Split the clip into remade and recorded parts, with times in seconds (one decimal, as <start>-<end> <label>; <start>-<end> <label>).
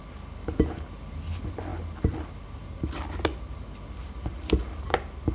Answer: 0.0-5.3 recorded